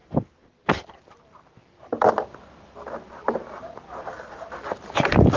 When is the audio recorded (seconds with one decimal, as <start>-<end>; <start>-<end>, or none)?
0.0-1.6; 2.1-5.4